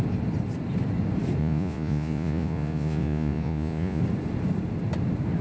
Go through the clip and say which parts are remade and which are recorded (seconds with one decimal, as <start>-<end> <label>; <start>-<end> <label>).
0.0-1.4 recorded; 1.4-4.0 remade; 4.0-5.4 recorded